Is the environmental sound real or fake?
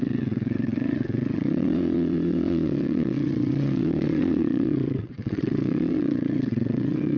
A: fake